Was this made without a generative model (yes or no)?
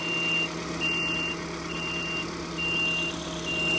yes